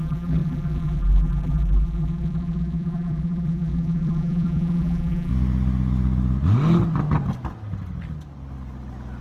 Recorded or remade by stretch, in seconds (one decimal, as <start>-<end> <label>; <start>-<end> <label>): 0.0-5.3 remade; 5.3-9.2 recorded